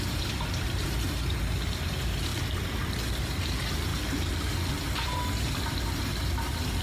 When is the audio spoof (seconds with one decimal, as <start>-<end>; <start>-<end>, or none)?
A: 0.0-2.3; 3.1-3.9; 4.7-6.8